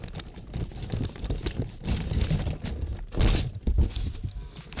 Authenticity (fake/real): real